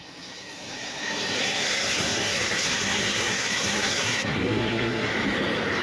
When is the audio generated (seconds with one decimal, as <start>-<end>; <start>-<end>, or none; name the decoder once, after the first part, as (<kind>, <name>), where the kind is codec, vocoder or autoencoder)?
0.0-5.1 (codec, SNAC)